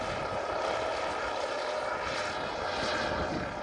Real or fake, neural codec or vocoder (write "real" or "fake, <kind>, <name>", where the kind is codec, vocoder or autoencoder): real